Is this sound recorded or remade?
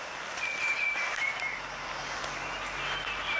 recorded